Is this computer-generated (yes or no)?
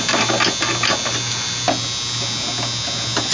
no